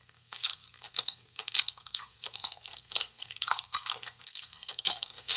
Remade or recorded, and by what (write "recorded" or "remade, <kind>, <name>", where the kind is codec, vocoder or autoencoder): remade, codec, SNAC